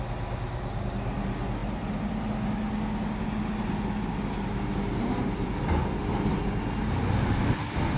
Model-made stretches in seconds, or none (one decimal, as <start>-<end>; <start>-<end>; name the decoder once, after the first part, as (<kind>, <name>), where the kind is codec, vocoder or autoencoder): none